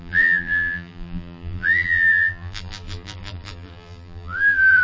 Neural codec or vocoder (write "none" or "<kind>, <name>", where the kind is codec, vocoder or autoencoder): vocoder, BigVGAN v2